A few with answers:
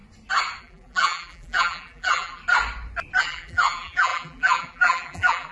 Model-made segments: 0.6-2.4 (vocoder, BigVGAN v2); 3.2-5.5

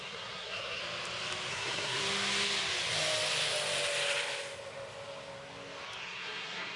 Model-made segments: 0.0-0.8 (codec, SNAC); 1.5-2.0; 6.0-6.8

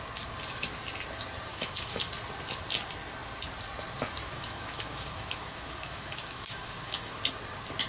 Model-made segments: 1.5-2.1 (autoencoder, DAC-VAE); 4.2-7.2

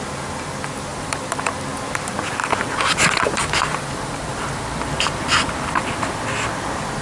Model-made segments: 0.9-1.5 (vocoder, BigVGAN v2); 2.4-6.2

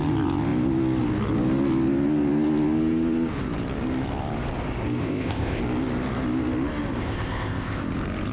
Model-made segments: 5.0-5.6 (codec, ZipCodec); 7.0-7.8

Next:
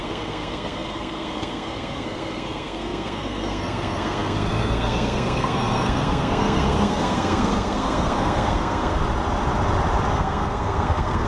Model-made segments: 0.0-9.0 (codec, SNAC); 10.1-11.3

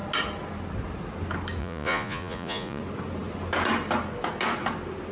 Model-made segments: 1.6-2.8 (vocoder, Vocos)

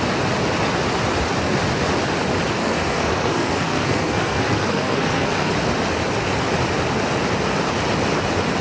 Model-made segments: 2.6-5.5 (codec, SNAC)